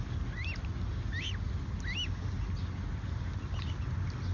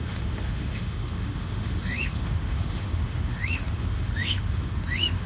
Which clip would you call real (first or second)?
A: first